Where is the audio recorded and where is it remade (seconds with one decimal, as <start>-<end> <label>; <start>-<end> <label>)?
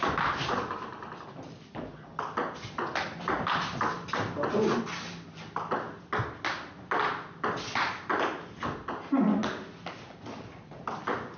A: 0.0-11.4 recorded